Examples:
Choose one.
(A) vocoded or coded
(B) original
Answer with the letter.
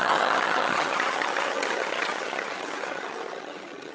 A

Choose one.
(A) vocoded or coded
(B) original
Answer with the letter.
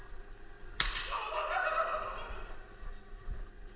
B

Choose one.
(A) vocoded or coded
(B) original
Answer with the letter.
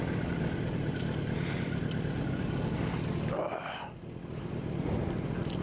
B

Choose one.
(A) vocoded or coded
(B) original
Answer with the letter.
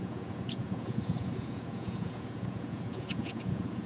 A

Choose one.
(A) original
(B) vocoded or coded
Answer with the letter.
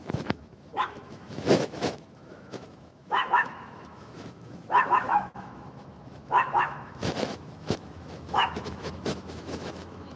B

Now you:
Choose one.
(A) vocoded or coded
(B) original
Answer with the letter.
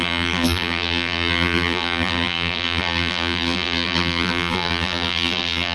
A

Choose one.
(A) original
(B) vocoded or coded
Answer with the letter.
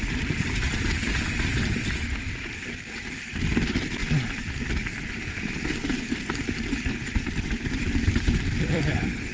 B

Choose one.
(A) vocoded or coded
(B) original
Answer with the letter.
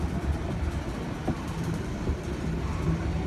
A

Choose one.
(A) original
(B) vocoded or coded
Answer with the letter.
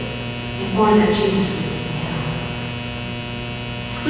A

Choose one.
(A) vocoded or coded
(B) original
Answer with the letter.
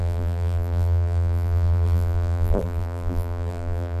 A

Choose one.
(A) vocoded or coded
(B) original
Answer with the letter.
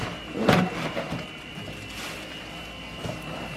B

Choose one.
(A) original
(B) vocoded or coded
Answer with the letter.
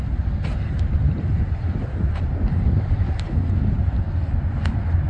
A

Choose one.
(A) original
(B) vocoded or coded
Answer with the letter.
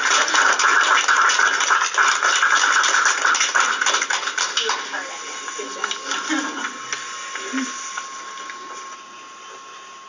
A